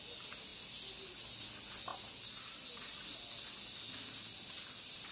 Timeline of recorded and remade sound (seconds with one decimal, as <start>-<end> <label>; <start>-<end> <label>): 0.0-5.1 recorded

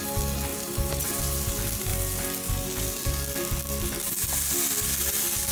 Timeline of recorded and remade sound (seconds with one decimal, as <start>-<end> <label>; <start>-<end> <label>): 0.0-0.5 recorded; 0.5-1.2 remade; 1.2-5.5 recorded

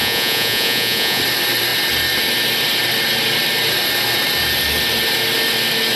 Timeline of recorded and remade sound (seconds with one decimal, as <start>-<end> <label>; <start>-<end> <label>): 0.0-1.2 remade; 1.2-6.0 recorded